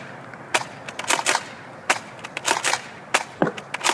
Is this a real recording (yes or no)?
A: yes